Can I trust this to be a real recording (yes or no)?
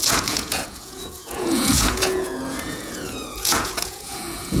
no